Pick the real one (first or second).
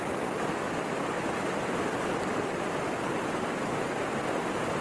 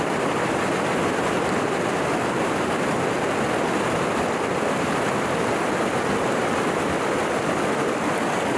second